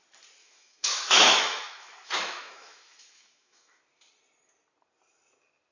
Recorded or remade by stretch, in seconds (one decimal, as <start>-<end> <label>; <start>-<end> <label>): 0.0-0.4 recorded; 0.4-3.8 remade; 3.8-5.7 recorded